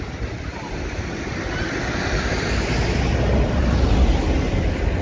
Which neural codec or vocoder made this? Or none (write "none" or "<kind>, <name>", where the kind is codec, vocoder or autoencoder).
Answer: none